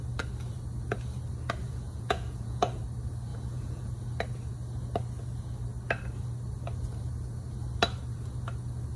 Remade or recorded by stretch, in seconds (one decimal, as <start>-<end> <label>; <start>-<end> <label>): 0.0-1.6 recorded; 1.6-2.8 remade; 2.8-3.3 recorded; 3.3-3.9 remade; 3.9-9.0 recorded